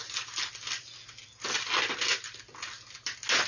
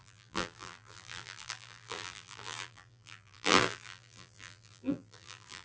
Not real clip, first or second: second